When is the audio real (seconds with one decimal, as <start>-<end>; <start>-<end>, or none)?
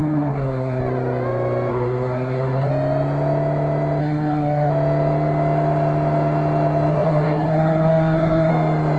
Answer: 0.8-1.7; 2.7-4.0; 4.7-6.9; 8.5-9.0